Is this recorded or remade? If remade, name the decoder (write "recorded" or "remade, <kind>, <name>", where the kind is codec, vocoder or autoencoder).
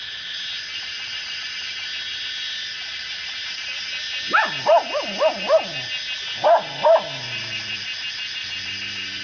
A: recorded